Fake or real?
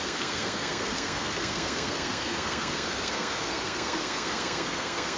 fake